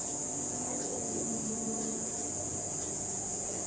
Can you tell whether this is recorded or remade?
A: remade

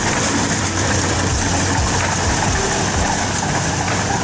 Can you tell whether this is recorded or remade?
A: remade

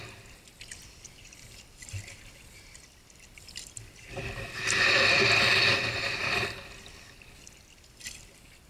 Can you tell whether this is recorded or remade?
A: recorded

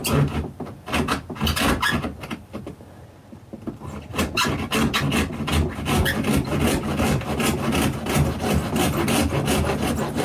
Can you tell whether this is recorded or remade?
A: recorded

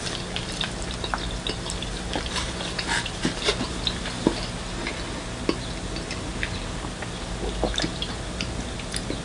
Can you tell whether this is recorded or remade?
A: recorded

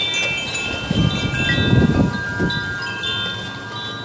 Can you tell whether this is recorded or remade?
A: recorded